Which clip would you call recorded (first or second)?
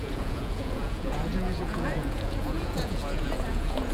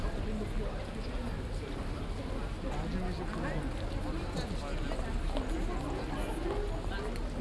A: second